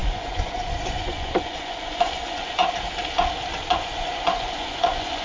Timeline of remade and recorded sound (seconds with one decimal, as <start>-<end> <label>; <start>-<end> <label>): 0.0-2.6 remade; 2.6-3.7 recorded; 3.7-5.2 remade